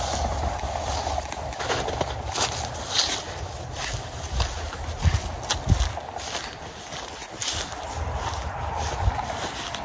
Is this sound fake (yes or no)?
no